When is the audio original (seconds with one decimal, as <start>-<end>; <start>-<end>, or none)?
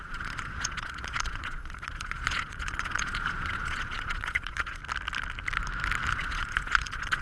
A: 4.8-6.1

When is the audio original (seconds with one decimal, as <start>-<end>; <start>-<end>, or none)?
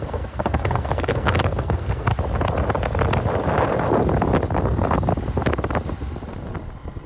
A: 2.1-4.6; 5.1-7.1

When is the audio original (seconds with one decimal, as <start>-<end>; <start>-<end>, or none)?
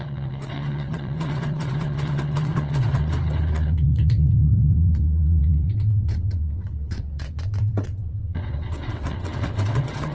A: none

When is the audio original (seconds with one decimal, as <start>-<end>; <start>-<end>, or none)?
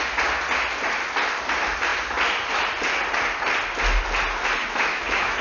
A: 0.0-4.6